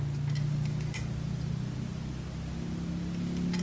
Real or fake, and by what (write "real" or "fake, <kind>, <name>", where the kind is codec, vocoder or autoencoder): real